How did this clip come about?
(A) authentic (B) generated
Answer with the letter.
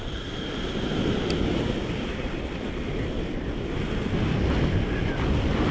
A